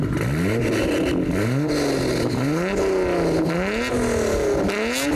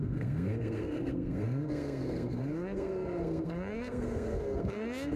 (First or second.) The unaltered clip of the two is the first